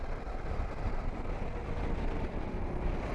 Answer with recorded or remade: recorded